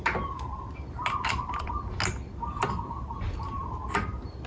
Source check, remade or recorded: recorded